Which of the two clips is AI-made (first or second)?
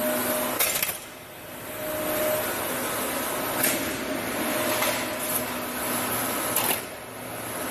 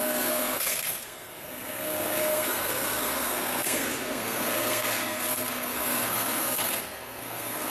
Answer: second